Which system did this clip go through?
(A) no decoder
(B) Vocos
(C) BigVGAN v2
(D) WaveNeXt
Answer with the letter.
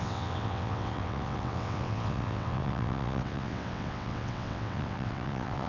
D